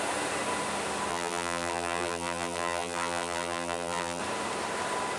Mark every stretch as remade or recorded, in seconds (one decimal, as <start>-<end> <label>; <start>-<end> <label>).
0.0-1.1 recorded; 1.1-4.2 remade; 4.2-5.2 recorded

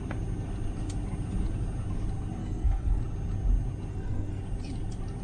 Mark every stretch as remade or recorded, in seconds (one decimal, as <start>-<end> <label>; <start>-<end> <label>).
0.0-2.4 recorded; 2.4-3.0 remade; 3.0-3.9 recorded; 3.9-4.4 remade; 4.4-5.2 recorded

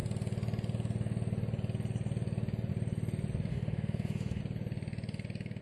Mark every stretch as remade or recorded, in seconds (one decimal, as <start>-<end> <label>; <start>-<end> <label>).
0.0-3.5 recorded; 3.5-4.4 remade; 4.4-5.6 recorded

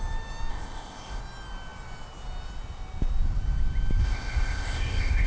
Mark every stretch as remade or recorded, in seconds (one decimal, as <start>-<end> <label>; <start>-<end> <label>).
0.0-0.5 recorded; 0.5-1.2 remade; 1.2-4.0 recorded; 4.0-5.3 remade

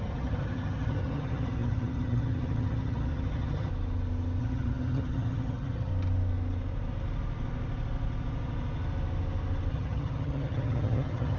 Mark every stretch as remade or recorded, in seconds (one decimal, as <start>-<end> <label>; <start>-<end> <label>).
0.0-3.7 remade; 3.7-4.4 recorded; 4.4-5.9 remade; 5.9-9.7 recorded; 9.7-11.4 remade

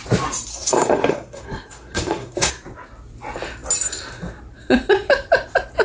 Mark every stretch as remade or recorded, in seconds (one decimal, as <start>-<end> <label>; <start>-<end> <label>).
0.0-0.5 recorded; 0.5-2.5 remade; 2.5-5.8 recorded